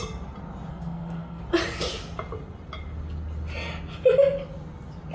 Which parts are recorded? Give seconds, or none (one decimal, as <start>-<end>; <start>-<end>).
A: 0.0-0.7; 1.4-5.1